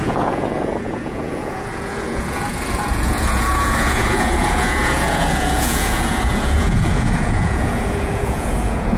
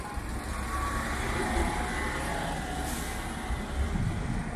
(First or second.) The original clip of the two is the second